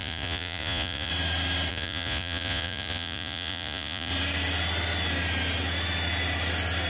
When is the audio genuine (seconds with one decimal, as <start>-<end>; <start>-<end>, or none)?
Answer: 1.1-1.7; 4.1-6.9